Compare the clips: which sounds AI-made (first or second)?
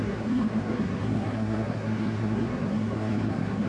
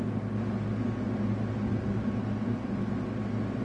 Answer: first